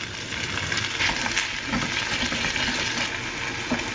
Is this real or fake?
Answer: real